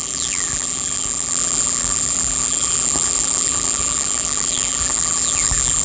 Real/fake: fake